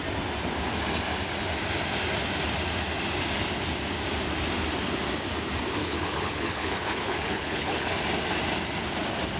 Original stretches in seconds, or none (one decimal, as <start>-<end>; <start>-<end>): 0.0-5.8; 7.9-9.4